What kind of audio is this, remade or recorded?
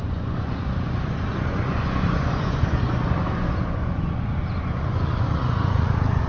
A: remade